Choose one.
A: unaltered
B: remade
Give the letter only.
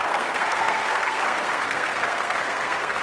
B